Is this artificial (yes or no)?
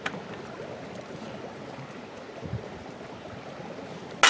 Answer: no